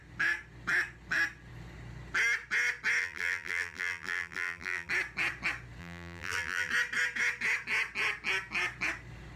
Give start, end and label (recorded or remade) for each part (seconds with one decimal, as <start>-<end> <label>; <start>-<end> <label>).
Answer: 0.0-3.0 recorded; 3.0-4.9 remade; 4.9-5.8 recorded; 5.8-6.7 remade; 6.7-9.4 recorded